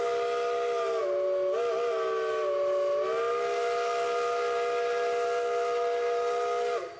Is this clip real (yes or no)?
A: yes